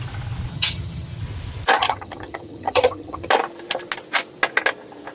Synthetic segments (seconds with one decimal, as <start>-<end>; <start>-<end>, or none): 0.5-1.2; 1.8-3.3